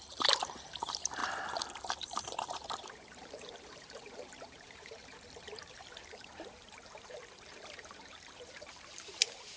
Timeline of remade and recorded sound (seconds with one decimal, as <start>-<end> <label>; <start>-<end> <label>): 0.0-1.2 remade; 1.2-2.0 recorded; 2.0-9.6 remade